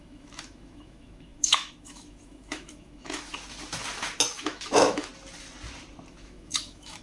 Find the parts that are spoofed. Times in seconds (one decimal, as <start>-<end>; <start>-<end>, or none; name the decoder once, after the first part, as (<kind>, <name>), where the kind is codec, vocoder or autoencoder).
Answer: 0.0-3.3 (autoencoder, DAC-VAE); 4.3-5.1; 6.1-7.0